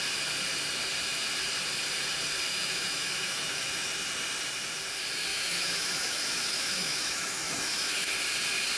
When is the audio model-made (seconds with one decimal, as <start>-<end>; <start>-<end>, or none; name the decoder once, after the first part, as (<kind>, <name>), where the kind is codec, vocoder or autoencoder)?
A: 2.5-3.9 (autoencoder, DAC-VAE); 5.3-8.1